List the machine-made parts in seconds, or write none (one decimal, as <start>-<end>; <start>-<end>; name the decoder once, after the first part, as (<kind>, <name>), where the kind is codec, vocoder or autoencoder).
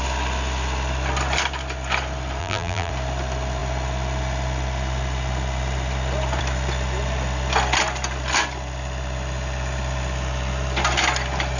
2.4-2.9 (vocoder, BigVGAN v2)